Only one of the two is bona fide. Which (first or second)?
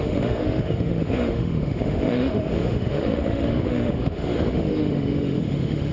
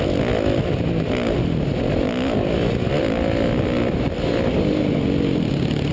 second